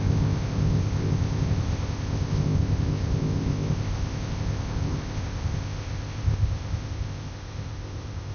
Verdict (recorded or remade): remade